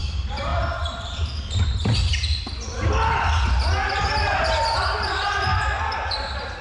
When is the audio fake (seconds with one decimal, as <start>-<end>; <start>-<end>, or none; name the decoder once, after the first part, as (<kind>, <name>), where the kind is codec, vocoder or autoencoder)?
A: none